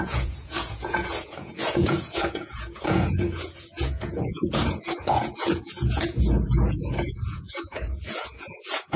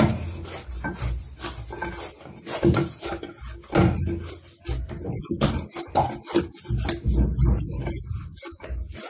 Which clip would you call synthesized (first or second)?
first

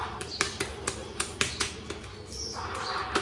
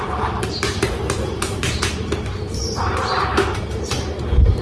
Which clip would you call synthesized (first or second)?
second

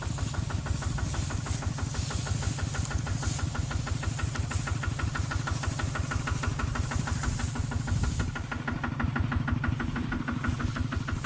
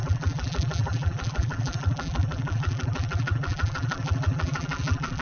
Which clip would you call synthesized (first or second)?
second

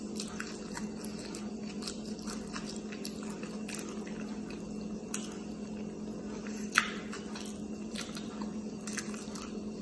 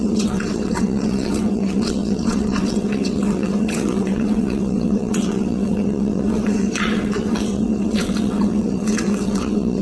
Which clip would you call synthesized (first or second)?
second